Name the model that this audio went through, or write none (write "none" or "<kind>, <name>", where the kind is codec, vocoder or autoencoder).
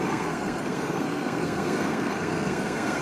codec, SNAC